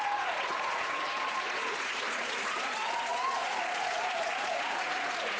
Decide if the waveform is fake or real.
fake